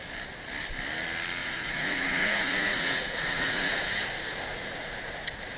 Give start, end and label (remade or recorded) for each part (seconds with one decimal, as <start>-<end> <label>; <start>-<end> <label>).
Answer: 0.0-1.4 recorded; 1.4-3.8 remade; 3.8-4.5 recorded; 4.5-5.1 remade; 5.1-5.6 recorded